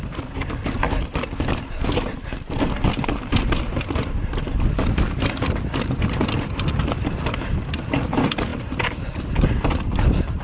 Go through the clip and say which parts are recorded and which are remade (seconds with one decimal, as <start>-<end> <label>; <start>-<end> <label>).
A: 0.0-10.4 recorded